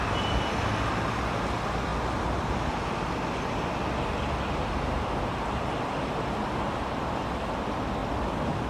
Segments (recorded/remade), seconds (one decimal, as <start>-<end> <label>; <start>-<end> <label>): 0.0-8.7 recorded